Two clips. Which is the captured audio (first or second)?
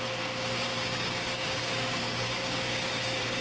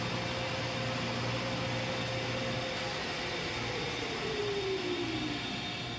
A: second